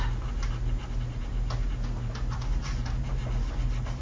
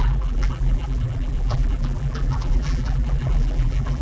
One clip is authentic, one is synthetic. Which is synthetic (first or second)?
second